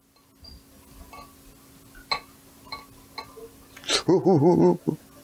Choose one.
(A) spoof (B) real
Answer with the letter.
B